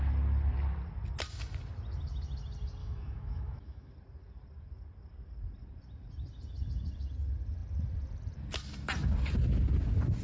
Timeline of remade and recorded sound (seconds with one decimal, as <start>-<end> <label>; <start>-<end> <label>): 0.0-2.8 recorded; 2.8-3.9 remade; 3.9-10.2 recorded